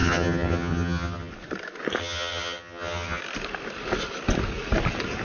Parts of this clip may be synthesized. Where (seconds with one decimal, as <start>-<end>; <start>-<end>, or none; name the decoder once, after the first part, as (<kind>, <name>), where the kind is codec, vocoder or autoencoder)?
0.0-1.3 (vocoder, HiFi-GAN); 2.0-3.2